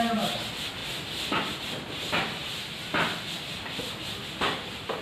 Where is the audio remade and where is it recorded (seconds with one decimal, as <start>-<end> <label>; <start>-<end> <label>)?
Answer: 0.0-5.0 recorded